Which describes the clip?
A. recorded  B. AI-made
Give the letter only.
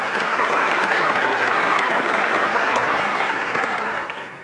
B